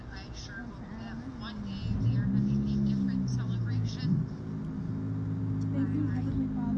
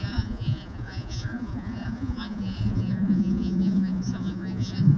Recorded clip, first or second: first